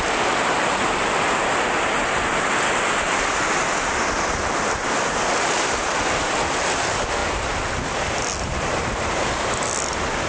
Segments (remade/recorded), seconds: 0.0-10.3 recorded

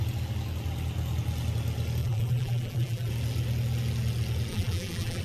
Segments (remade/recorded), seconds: 0.0-2.0 recorded; 2.0-3.1 remade; 3.1-4.5 recorded; 4.5-5.2 remade

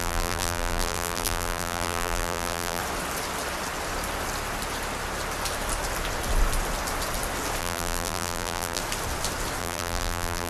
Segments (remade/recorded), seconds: 0.0-2.8 remade; 2.8-7.6 recorded; 7.6-8.8 remade; 8.8-9.6 recorded; 9.6-10.5 remade

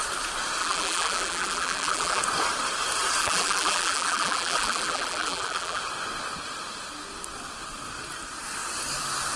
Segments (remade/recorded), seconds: 0.0-0.6 recorded; 0.6-2.2 remade; 2.2-3.2 recorded; 3.2-5.8 remade; 5.8-9.4 recorded

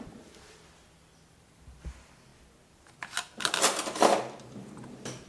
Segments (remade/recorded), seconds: 0.0-2.3 remade; 2.3-5.3 recorded